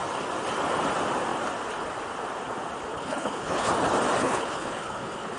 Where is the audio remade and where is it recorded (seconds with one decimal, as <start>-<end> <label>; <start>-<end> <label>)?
0.0-2.9 recorded; 2.9-3.7 remade; 3.7-4.2 recorded; 4.2-5.4 remade